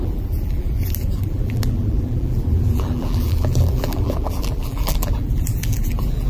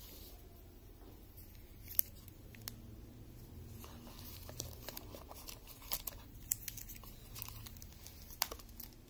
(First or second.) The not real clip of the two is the first